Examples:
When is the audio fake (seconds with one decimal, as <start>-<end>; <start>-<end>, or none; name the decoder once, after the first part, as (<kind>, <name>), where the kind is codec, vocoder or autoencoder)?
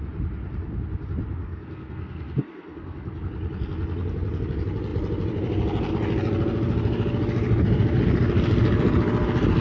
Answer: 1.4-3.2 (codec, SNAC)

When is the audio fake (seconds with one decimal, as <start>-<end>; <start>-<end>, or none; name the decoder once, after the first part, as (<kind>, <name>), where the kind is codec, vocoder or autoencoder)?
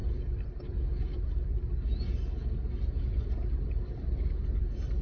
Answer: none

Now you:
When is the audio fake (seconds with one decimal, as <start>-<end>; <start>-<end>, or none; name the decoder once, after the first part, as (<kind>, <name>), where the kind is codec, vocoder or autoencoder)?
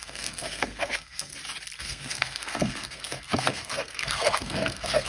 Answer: 0.0-1.3 (codec, SNAC); 1.8-5.1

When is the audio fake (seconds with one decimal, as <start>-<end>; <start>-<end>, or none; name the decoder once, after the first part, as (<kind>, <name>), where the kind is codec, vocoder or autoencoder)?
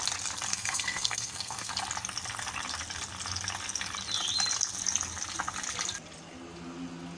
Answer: 0.5-1.7 (codec, SNAC)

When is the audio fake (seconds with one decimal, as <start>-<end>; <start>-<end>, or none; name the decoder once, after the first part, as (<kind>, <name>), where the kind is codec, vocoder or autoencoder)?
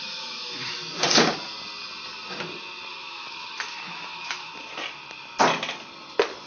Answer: 0.0-0.8 (autoencoder, DAC-VAE); 2.9-4.5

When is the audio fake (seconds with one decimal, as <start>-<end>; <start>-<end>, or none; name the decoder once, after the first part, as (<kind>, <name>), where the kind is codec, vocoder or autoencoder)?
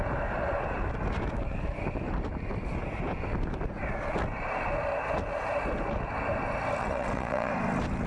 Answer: 6.8-7.5 (vocoder, WaveNeXt)